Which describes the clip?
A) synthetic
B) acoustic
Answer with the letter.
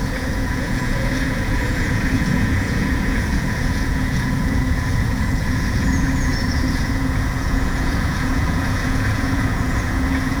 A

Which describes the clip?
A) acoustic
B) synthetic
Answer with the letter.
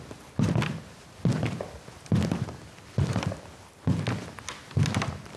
A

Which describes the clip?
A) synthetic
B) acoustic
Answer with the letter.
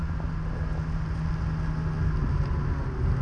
B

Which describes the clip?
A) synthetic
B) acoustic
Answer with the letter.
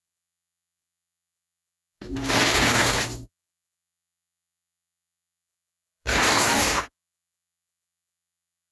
A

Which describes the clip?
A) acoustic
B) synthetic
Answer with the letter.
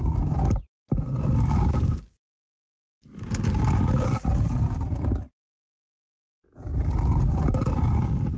A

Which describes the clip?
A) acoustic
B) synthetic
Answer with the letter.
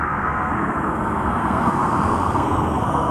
B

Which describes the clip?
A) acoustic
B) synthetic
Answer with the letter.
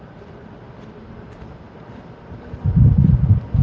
A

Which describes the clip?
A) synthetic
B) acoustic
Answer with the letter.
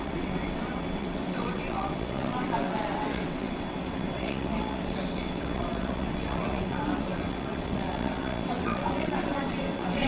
A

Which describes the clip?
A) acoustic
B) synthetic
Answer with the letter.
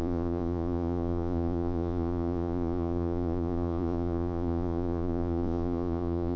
B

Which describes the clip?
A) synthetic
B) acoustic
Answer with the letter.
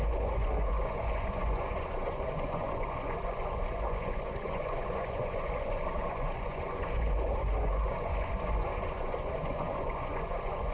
A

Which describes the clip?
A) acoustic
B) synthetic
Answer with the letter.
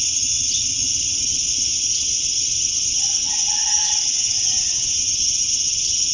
B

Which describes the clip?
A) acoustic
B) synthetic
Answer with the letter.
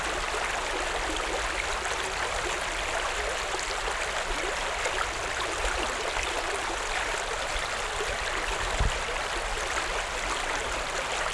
A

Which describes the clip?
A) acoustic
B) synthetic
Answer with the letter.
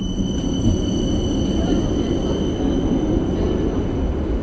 A